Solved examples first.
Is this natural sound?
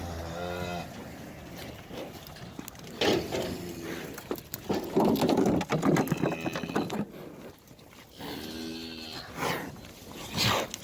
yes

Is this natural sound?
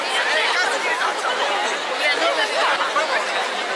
yes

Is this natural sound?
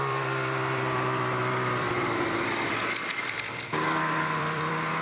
no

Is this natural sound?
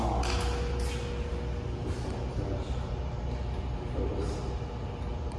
yes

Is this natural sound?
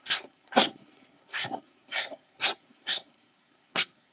no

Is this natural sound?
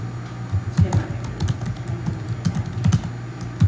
yes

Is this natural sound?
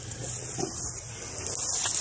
yes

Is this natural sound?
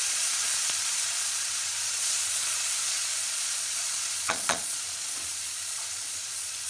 no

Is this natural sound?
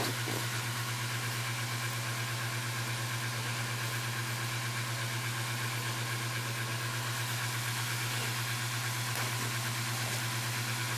yes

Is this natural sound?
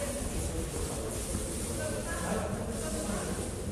yes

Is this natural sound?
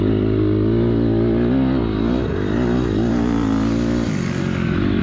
yes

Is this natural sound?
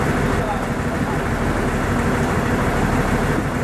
yes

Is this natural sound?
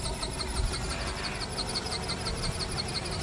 yes